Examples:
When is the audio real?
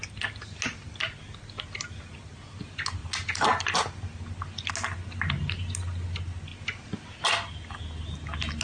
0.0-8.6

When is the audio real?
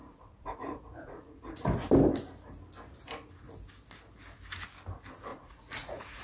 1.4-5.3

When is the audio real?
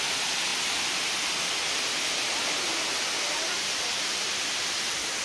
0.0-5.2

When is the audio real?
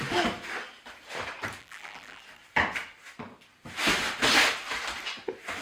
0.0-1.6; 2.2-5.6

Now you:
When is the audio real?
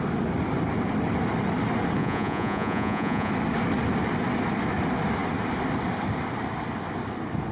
0.0-2.0; 3.3-7.5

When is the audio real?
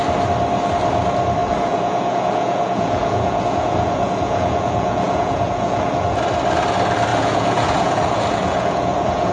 0.0-1.4; 6.2-7.1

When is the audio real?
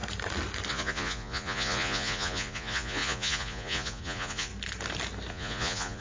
0.0-0.7; 4.5-5.3